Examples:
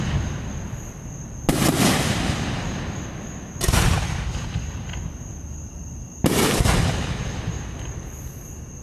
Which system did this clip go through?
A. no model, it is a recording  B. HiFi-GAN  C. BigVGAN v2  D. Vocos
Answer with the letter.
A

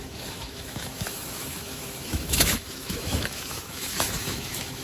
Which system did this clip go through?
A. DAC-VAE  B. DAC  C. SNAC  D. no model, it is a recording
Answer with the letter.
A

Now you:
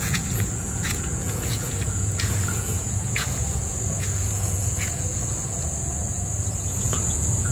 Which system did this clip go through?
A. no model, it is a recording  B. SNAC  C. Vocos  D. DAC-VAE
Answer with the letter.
C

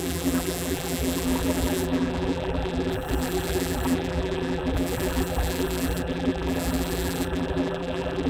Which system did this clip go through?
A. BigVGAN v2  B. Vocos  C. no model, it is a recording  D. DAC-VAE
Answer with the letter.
A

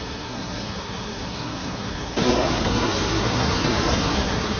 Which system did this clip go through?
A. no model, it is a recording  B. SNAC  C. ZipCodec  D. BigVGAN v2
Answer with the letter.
B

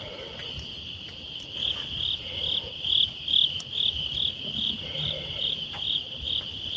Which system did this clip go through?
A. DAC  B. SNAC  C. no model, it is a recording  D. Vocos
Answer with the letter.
C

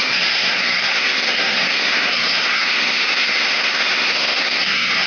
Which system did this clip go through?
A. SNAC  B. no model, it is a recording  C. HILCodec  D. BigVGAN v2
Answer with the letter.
A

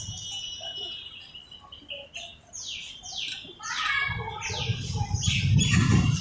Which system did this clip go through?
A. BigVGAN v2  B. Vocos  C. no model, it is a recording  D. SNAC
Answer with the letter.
C